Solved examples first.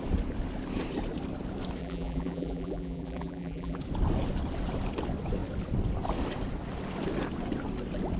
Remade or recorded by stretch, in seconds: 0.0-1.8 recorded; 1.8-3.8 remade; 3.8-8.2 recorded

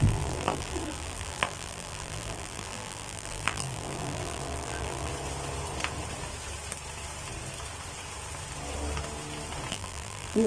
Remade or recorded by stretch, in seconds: 0.0-5.1 remade; 5.1-9.7 recorded; 9.7-10.5 remade